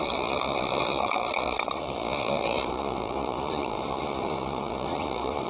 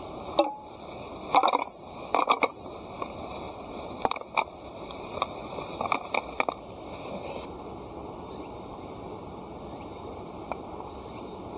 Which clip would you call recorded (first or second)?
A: second